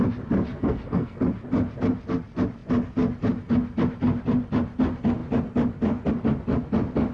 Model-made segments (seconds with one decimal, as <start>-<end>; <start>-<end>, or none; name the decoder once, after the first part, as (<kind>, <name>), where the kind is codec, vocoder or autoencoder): 0.5-1.2 (codec, SNAC)